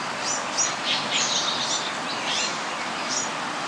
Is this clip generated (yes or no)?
no